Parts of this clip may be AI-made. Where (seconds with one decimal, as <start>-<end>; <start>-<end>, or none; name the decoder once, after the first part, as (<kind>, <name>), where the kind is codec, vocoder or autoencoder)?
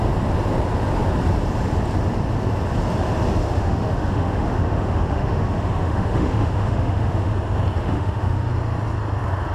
3.4-7.3 (autoencoder, DAC-VAE); 7.8-8.5